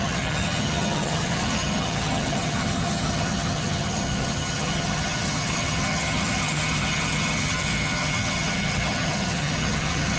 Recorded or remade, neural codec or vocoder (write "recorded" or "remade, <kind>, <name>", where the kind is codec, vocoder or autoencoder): remade, vocoder, HiFi-GAN